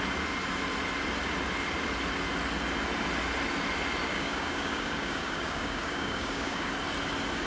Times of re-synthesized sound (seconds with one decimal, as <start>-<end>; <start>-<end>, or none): 4.1-6.7